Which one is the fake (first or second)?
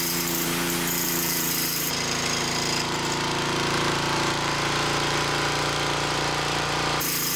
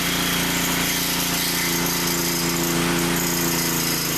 first